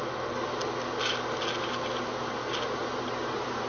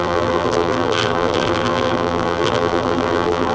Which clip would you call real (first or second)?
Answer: first